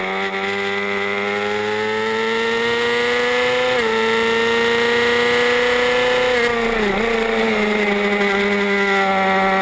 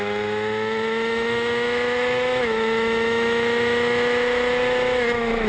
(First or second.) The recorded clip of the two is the first